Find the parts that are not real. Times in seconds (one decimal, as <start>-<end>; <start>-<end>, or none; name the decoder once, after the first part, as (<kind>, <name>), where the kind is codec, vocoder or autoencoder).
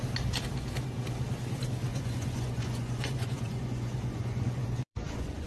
1.9-5.5 (vocoder, Vocos)